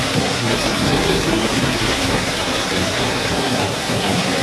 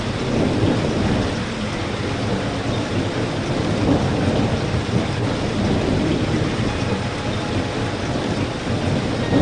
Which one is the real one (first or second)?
second